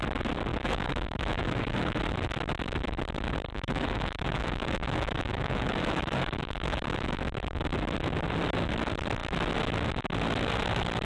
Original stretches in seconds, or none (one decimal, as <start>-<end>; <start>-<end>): 0.0-0.5; 2.0-3.5; 7.2-11.0